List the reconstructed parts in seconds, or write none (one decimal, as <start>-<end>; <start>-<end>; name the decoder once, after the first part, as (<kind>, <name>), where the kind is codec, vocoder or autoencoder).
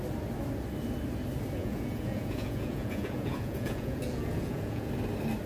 1.6-4.9 (vocoder, Vocos)